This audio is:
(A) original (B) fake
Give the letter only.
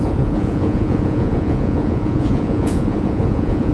B